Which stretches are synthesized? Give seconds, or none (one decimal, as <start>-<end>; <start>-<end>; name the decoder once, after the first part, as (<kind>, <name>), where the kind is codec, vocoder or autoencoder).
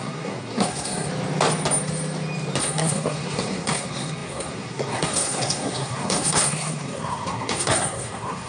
0.0-1.1 (codec, SNAC); 2.6-8.5